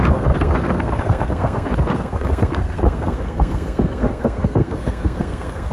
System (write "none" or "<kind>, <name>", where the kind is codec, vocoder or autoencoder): codec, SNAC